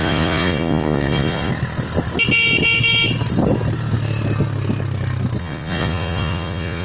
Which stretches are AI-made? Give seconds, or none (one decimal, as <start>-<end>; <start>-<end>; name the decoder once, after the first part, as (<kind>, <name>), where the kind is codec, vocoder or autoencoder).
0.0-1.5 (vocoder, Vocos); 5.4-6.8

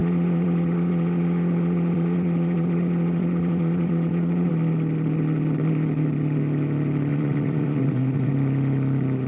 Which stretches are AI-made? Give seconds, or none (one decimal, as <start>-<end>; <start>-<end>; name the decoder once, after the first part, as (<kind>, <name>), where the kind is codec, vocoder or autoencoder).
0.0-4.5 (vocoder, Vocos); 7.1-8.3

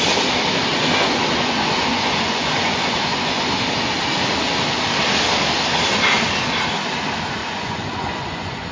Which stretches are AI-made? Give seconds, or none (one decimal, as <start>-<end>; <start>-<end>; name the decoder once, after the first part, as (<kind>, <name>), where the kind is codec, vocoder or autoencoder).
0.7-3.4 (vocoder, Vocos); 7.4-8.7

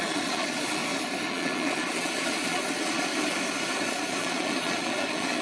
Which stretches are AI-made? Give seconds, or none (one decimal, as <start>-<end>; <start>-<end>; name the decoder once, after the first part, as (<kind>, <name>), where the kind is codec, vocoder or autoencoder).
0.0-0.8 (vocoder, Vocos); 1.3-3.1; 3.8-5.4

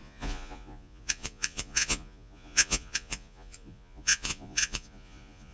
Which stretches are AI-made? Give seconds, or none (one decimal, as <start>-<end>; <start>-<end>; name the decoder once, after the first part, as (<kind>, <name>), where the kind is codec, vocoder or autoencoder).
0.0-5.5 (vocoder, Vocos)

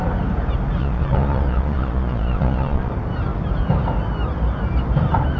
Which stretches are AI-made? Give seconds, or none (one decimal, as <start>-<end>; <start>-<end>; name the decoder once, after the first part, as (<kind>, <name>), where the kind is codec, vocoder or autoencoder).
0.8-2.9 (vocoder, Vocos)

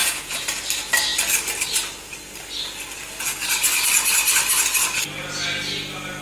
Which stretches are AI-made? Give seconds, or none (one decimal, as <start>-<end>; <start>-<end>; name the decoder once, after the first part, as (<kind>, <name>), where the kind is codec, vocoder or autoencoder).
0.0-0.6 (vocoder, Vocos)

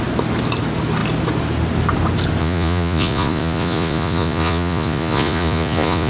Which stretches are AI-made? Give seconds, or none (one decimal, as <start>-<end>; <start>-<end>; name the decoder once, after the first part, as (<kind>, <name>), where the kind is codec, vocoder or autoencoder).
2.4-6.1 (vocoder, Vocos)